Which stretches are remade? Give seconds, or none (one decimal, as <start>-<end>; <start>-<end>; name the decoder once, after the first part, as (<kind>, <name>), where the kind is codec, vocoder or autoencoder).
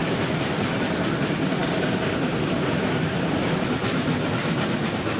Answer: none